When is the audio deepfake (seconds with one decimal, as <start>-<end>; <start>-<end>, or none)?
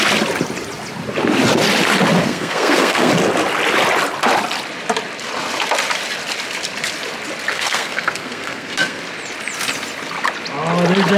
2.2-3.1; 7.5-9.0